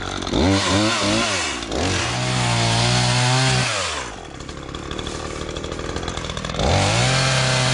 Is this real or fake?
real